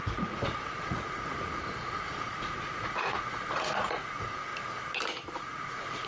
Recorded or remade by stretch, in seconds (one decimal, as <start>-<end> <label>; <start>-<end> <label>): 0.0-4.5 remade; 4.5-5.3 recorded; 5.3-6.1 remade